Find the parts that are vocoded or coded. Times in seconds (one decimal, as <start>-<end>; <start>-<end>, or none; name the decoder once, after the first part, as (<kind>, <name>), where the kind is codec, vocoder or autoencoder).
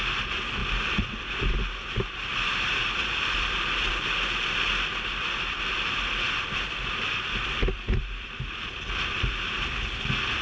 0.6-3.9 (vocoder, BigVGAN v2); 4.9-9.7